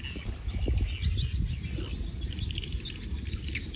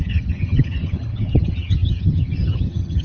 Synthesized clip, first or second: second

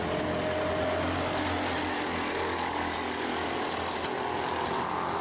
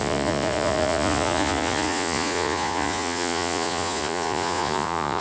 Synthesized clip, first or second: second